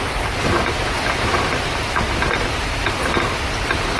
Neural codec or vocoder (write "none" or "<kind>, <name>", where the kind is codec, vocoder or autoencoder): none